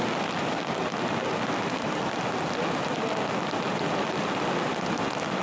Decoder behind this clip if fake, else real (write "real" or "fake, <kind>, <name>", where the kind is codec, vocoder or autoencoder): real